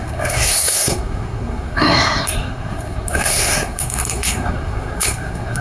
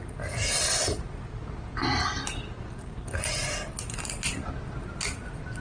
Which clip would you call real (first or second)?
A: second